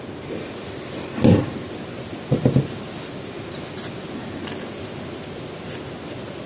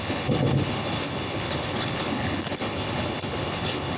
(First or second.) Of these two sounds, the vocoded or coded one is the second